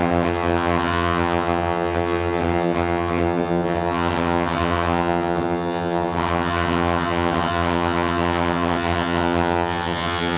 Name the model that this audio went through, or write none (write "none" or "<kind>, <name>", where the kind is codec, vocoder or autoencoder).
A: vocoder, HiFi-GAN